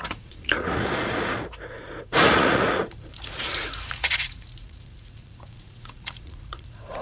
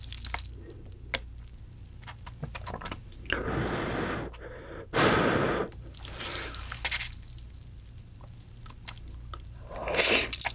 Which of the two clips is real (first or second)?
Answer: second